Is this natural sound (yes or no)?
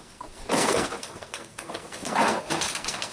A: no